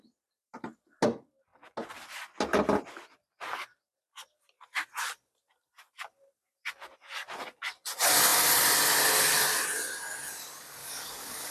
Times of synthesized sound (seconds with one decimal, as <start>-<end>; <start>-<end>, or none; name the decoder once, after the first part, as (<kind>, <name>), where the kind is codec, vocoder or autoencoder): 10.8-11.5 (codec, DAC)